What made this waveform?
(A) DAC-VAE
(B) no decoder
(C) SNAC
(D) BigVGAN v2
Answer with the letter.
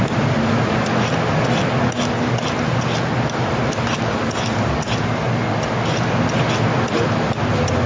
B